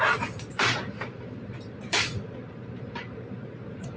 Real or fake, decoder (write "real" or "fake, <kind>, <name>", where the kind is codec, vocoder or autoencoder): fake, vocoder, BigVGAN v2